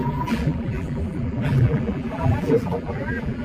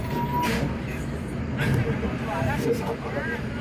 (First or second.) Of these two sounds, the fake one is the first